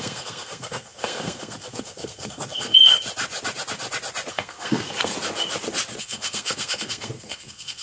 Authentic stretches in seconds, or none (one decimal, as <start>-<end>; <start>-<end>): 2.9-4.3; 5.1-6.0